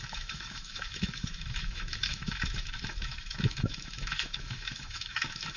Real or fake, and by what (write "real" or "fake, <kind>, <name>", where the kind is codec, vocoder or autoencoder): fake, autoencoder, DAC-VAE